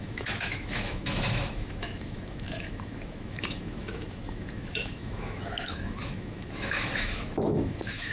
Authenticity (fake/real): fake